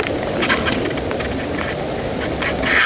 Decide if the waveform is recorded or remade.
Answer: recorded